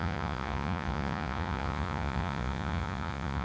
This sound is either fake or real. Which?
fake